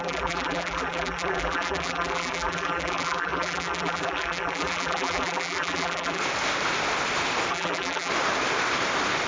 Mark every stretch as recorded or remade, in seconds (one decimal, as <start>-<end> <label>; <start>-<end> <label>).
0.0-6.2 remade; 6.2-7.5 recorded; 7.5-8.1 remade; 8.1-9.3 recorded